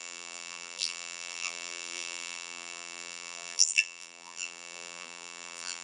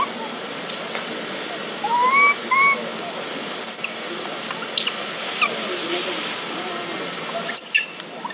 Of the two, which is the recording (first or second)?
second